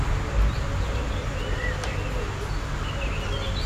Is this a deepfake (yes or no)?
no